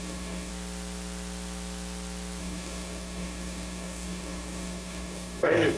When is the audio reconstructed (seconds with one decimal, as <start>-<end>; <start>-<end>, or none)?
0.0-0.5; 2.4-5.8